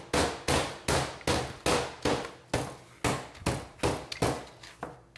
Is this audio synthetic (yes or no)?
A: no